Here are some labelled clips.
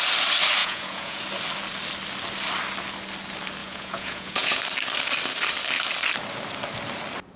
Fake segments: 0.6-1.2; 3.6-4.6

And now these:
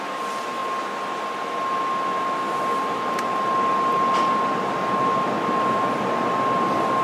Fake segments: none

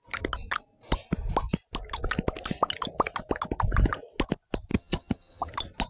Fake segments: 4.7-5.5

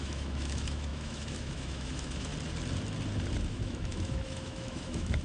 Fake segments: 0.0-2.3; 3.5-5.2

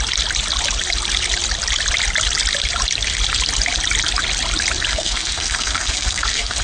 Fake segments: 4.9-6.6

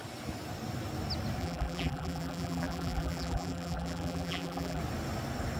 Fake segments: 1.4-4.8

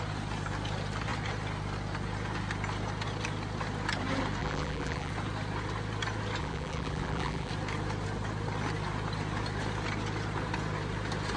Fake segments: 4.4-5.1; 6.4-7.5